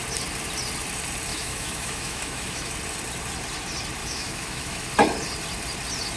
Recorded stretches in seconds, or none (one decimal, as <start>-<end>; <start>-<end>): 0.0-1.3; 2.7-4.0; 4.9-6.2